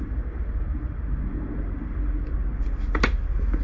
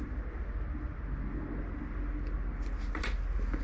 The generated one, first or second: first